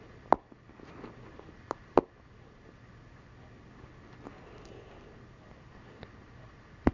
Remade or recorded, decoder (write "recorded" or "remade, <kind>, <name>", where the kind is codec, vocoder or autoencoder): recorded